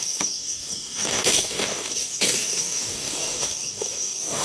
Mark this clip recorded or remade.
remade